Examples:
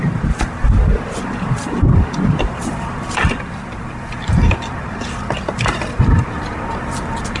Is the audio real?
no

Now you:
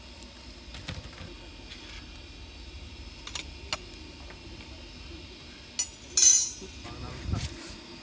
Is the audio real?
yes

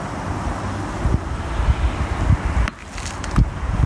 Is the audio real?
yes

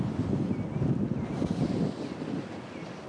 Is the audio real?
yes